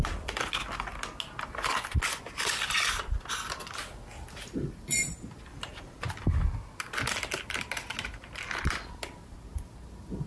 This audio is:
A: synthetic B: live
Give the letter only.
B